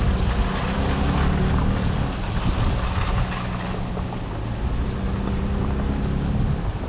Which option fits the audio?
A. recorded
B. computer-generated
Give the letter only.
A